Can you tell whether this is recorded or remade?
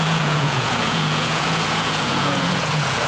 remade